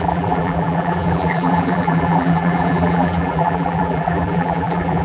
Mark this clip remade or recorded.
remade